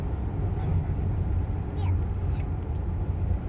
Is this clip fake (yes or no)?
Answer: no